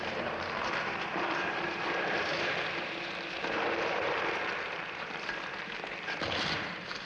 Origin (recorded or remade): remade